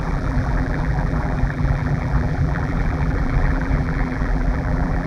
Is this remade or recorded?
remade